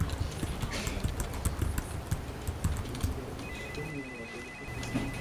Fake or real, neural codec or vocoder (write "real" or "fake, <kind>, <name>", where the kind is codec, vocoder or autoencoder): real